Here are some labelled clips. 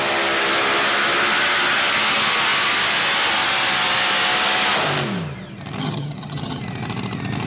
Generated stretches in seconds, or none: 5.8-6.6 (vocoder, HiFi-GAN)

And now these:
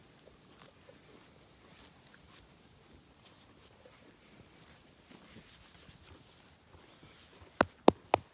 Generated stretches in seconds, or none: none

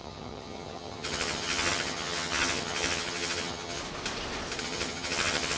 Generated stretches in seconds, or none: 0.0-3.8 (vocoder, HiFi-GAN); 4.6-5.6